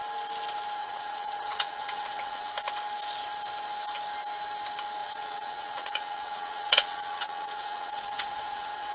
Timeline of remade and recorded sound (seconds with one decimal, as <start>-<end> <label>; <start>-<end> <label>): 0.0-0.8 recorded; 0.8-2.5 remade; 2.5-5.0 recorded; 5.0-8.9 remade